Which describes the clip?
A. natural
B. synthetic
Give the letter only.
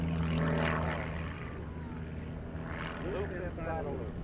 A